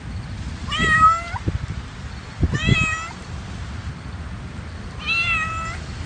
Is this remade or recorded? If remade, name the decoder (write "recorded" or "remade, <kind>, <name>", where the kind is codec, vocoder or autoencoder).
recorded